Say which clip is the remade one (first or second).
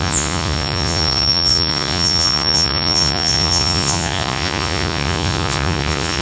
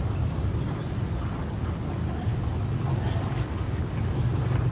first